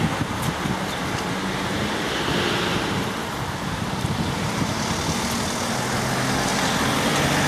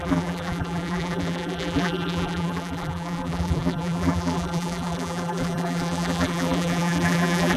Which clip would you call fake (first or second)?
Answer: second